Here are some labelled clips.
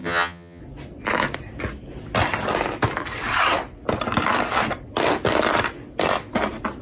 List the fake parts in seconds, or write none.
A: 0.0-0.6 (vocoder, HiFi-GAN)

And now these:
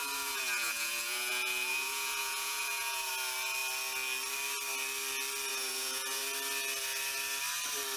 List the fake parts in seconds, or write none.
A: 0.0-3.1 (vocoder, Vocos); 5.5-6.2

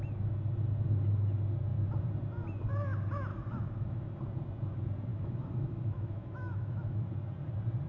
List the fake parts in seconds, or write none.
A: 3.3-4.1 (autoencoder, DAC-VAE); 5.1-7.1

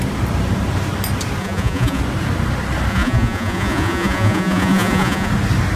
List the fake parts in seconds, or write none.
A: 1.4-2.0 (vocoder, Vocos); 2.9-5.3

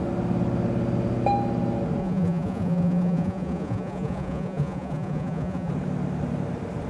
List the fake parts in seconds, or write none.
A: 2.0-5.7 (vocoder, Vocos)

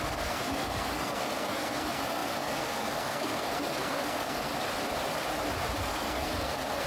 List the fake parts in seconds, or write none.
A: 0.0-4.5 (codec, SNAC); 5.8-6.9